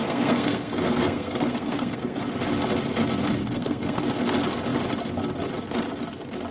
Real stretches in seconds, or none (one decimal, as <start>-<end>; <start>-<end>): 2.2-3.4; 4.0-6.5